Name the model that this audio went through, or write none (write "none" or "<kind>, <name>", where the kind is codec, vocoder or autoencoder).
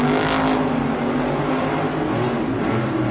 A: none